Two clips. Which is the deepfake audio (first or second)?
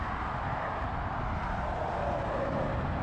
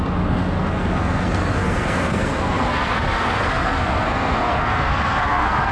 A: second